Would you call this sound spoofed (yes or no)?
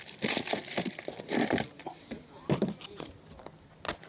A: no